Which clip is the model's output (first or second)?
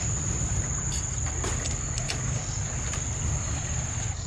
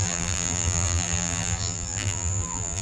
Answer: second